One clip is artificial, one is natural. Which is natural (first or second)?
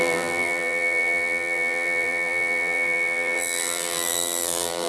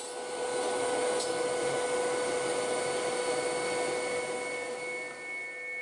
second